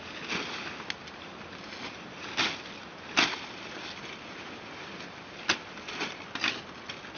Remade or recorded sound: recorded